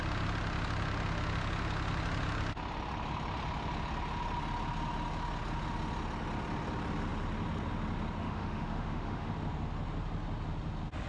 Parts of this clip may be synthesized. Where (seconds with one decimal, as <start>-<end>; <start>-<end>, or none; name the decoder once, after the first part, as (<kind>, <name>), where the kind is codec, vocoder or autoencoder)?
8.2-9.3 (autoencoder, DAC-VAE)